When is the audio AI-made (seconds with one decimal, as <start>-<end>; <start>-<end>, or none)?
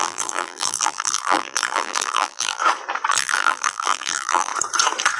0.0-2.6; 3.1-4.5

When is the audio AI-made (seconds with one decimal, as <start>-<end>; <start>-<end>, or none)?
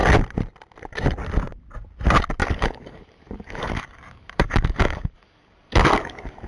2.4-6.5